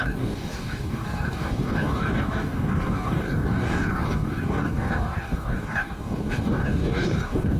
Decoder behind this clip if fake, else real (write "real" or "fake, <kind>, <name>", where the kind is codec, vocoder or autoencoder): fake, codec, DAC